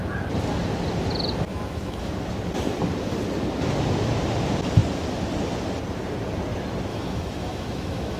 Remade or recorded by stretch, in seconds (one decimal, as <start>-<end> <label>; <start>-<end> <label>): 0.0-1.5 recorded; 1.5-2.1 remade; 2.1-6.9 recorded; 6.9-8.2 remade